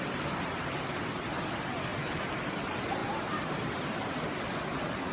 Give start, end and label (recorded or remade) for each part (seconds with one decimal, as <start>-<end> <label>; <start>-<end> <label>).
0.0-1.9 recorded; 1.9-2.4 remade; 2.4-3.0 recorded; 3.0-4.4 remade; 4.4-5.1 recorded